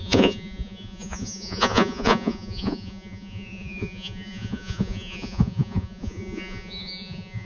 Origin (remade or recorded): remade